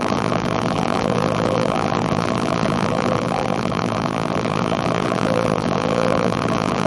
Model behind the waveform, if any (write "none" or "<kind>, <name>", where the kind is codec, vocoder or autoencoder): vocoder, BigVGAN v2